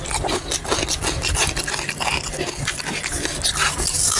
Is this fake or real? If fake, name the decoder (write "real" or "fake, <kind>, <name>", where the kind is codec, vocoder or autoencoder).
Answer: real